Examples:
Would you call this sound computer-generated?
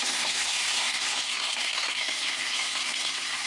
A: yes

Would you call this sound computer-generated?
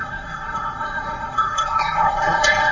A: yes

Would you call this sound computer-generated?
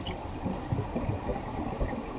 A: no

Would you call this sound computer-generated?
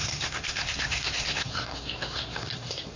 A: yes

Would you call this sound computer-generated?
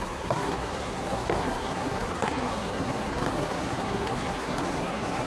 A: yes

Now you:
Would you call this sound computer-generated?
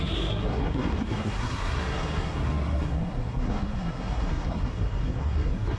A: yes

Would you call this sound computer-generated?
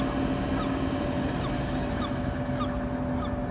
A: no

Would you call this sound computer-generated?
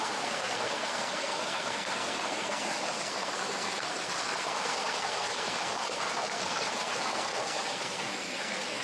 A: yes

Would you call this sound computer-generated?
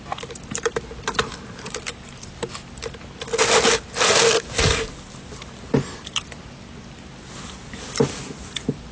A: no